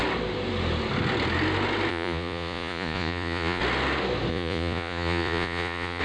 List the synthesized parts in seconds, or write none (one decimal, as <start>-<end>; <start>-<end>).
1.9-3.6; 4.3-6.0